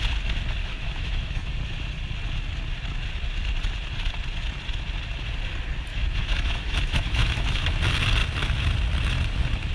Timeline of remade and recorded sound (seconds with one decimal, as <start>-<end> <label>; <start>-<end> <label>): 0.0-0.6 recorded; 0.6-1.5 remade; 1.5-5.9 recorded; 5.9-7.7 remade; 7.7-9.7 recorded